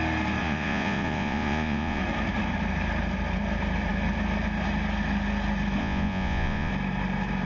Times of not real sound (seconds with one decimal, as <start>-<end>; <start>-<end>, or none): 0.4-2.0; 5.8-6.7